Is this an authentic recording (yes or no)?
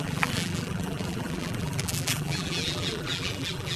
no